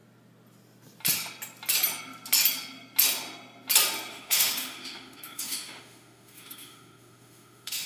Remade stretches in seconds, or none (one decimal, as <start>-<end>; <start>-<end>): 4.1-7.9